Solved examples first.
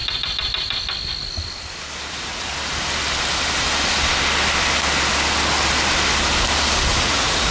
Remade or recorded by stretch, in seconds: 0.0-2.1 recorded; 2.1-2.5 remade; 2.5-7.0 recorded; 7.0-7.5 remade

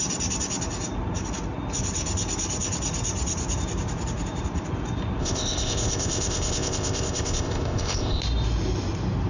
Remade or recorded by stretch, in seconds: 0.0-5.2 recorded; 5.2-8.2 remade; 8.2-9.3 recorded

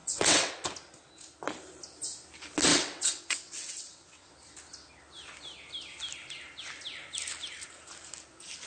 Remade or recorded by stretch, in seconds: 0.0-0.5 remade; 0.5-2.7 recorded; 2.7-4.3 remade; 4.3-8.7 recorded

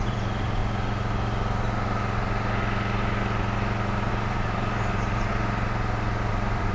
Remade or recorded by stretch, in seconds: 0.0-0.6 remade; 0.6-4.1 recorded; 4.1-5.3 remade; 5.3-6.3 recorded; 6.3-6.7 remade